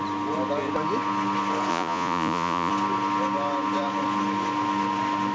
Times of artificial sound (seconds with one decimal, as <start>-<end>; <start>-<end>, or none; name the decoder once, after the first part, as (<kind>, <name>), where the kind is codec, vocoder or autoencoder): 1.7-2.7 (vocoder, Vocos)